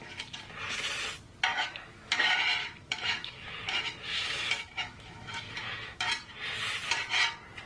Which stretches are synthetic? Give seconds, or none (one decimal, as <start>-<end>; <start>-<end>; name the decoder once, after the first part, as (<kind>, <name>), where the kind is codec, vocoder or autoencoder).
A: 1.5-2.2 (autoencoder, DAC-VAE); 2.6-6.1